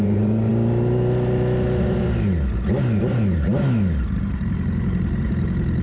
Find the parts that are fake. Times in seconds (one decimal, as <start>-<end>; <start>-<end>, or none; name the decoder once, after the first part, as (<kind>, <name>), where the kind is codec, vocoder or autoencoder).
0.0-0.5 (vocoder, BigVGAN v2); 3.0-3.5; 4.2-5.8